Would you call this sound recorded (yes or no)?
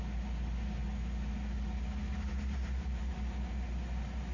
yes